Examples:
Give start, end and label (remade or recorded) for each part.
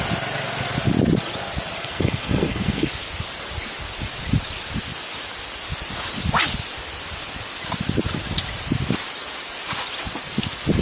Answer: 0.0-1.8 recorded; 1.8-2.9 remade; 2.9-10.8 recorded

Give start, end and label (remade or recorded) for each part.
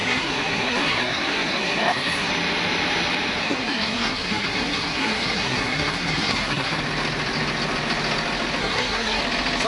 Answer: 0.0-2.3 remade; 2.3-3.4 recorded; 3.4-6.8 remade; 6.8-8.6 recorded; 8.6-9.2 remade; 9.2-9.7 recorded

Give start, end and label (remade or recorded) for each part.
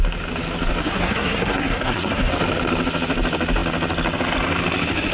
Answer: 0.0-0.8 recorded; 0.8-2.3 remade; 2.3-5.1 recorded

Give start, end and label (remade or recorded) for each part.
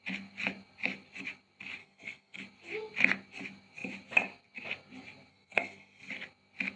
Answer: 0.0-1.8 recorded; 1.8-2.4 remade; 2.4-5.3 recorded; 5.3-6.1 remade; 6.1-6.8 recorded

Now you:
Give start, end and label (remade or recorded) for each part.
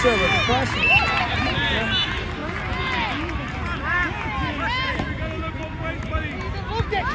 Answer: 0.0-7.1 recorded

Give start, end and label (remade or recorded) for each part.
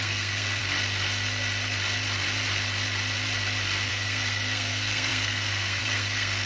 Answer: 0.0-0.6 remade; 0.6-3.9 recorded; 3.9-6.5 remade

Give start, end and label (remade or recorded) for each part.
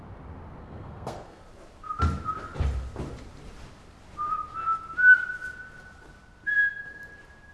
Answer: 0.0-0.6 recorded; 0.6-1.4 remade; 1.4-7.5 recorded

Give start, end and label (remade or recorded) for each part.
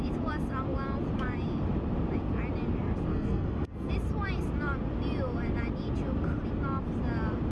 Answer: 0.0-3.1 recorded; 3.1-3.9 remade; 3.9-7.5 recorded